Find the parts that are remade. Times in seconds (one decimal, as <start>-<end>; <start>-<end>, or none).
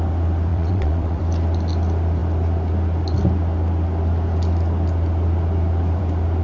0.5-1.2